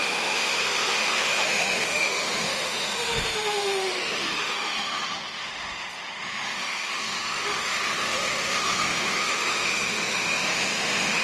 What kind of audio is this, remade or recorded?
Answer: remade